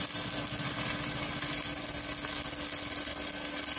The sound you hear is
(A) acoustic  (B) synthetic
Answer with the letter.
A